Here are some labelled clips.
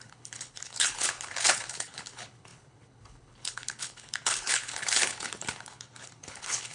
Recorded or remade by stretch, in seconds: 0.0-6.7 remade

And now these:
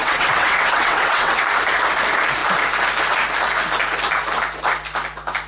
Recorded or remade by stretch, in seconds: 0.0-1.4 remade; 1.4-5.5 recorded

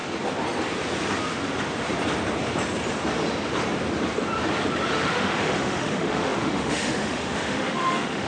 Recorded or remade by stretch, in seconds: 0.0-4.9 recorded; 4.9-8.3 remade

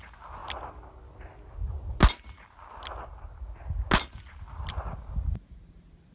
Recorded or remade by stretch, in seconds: 0.0-6.1 recorded

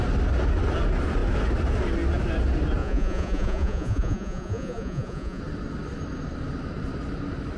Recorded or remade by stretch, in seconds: 0.0-2.8 recorded; 2.8-5.4 remade; 5.4-7.6 recorded